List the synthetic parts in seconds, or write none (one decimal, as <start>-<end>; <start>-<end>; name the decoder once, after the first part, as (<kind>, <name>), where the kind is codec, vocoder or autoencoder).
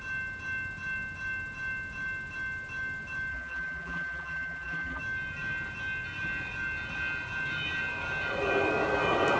3.3-5.0 (vocoder, BigVGAN v2)